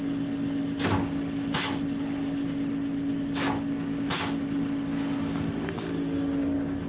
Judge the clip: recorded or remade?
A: recorded